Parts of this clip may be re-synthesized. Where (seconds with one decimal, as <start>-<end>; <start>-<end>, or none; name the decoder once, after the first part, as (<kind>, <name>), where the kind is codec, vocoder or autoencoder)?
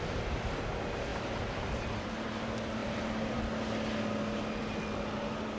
1.1-2.3 (vocoder, BigVGAN v2); 2.8-3.4